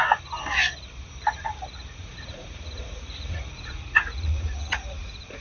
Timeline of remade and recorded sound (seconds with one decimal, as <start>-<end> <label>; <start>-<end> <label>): 0.0-2.0 recorded; 2.0-5.4 remade